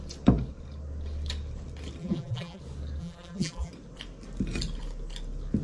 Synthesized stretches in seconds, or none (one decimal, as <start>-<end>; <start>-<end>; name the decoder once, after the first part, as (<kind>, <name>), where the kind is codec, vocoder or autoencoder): 2.0-2.6 (vocoder, BigVGAN v2); 3.0-3.7